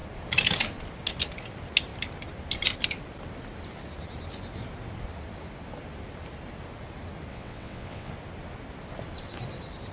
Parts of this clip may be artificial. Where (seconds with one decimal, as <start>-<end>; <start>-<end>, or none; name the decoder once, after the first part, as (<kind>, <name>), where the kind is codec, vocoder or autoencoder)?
7.3-8.1 (vocoder, WaveNeXt)